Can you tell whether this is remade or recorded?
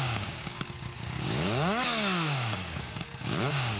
remade